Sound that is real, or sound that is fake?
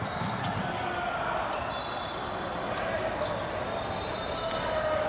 real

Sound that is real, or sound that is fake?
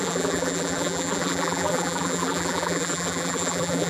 fake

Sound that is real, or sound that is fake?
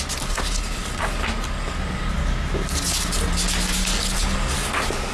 real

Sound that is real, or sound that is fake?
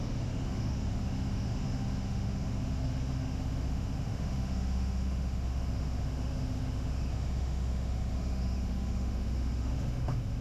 fake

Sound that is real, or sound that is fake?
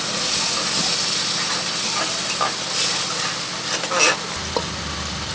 real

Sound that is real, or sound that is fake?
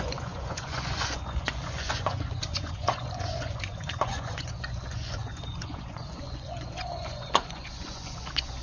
fake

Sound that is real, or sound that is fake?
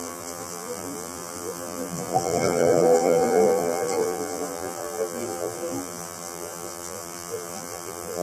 fake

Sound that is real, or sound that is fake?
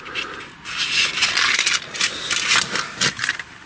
real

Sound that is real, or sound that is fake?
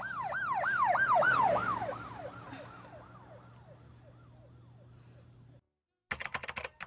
real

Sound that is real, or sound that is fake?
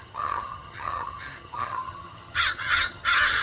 fake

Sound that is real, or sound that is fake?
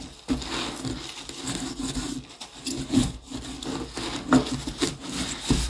real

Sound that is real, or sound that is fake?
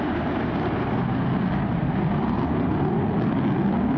real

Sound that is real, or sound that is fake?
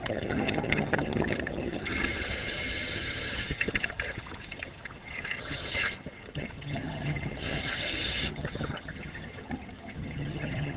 fake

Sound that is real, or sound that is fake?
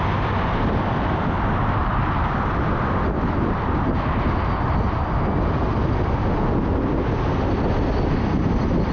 real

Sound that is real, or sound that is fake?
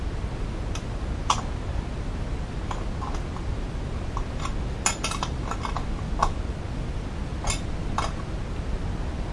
real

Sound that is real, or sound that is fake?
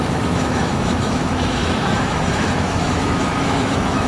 fake